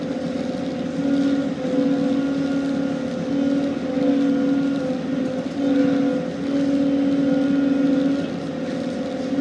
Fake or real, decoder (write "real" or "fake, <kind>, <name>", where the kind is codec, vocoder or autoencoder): real